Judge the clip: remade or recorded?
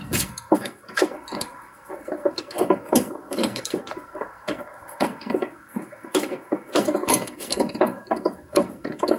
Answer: remade